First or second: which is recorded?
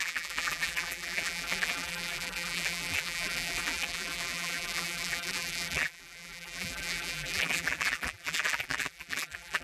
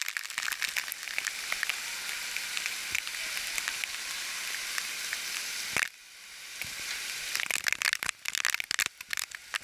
second